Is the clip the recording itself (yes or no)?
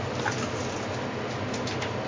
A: yes